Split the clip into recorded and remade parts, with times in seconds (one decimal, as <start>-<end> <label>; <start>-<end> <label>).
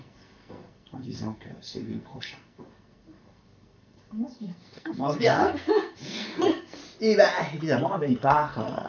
0.0-6.8 remade; 6.8-7.8 recorded; 7.8-8.9 remade